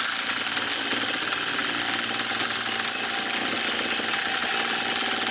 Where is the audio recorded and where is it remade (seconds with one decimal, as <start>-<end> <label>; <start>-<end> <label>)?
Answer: 0.0-5.3 recorded